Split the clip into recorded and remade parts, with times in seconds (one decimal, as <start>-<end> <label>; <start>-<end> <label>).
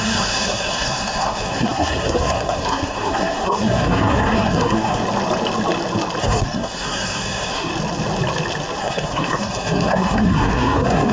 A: 0.0-5.0 remade; 5.0-6.2 recorded; 6.2-7.7 remade; 7.7-8.8 recorded; 8.8-11.1 remade